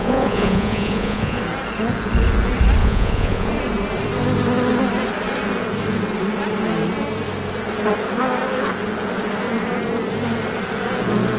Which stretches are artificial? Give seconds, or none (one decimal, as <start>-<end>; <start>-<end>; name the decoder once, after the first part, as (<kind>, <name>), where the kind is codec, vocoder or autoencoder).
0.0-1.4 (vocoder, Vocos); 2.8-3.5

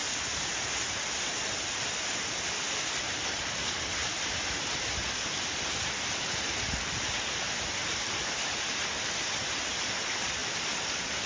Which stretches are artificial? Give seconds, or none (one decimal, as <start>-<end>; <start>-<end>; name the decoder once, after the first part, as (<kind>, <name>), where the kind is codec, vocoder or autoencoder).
none

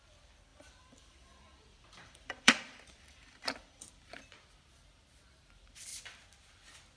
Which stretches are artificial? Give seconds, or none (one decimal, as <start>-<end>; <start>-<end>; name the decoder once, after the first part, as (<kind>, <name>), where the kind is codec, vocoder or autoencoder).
0.5-3.9 (vocoder, BigVGAN v2)

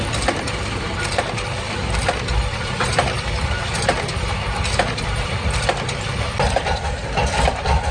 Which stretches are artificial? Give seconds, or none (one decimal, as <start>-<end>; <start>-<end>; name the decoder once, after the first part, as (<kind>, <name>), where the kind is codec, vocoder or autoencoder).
0.0-4.1 (vocoder, BigVGAN v2); 4.9-7.9

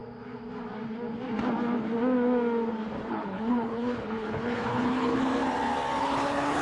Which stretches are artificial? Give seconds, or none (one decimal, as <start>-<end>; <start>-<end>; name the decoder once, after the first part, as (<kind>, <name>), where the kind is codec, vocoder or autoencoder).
3.1-5.3 (codec, HILCodec); 6.0-6.6

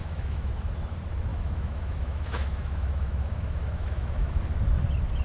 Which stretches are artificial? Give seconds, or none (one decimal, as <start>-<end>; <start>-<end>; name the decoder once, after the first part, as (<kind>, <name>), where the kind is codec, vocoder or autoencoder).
0.0-0.7 (autoencoder, DAC-VAE); 1.3-4.4

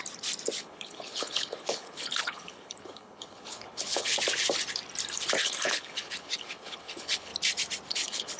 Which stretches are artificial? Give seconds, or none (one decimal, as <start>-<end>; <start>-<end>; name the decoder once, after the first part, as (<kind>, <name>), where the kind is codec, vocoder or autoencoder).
0.6-4.1 (codec, HILCodec); 5.4-7.3; 7.9-8.4

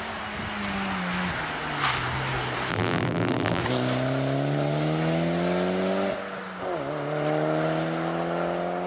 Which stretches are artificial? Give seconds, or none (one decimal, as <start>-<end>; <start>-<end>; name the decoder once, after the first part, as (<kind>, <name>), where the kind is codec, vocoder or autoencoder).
2.7-3.6 (vocoder, BigVGAN v2)